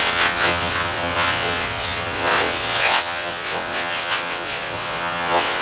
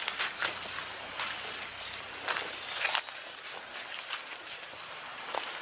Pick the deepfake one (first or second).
first